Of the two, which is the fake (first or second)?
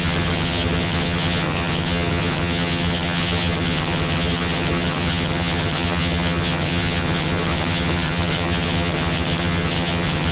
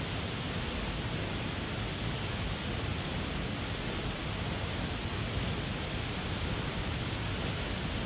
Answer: first